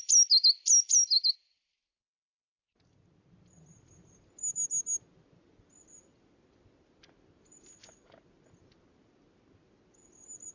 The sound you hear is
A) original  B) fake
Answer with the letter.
A